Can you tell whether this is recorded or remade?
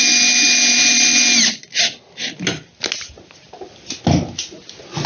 recorded